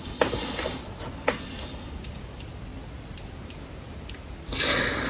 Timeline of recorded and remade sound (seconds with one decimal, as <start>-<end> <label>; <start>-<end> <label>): 0.0-5.1 recorded